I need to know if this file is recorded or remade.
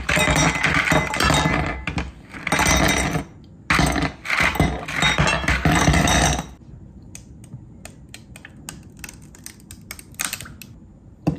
recorded